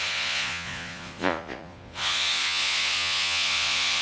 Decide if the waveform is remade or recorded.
remade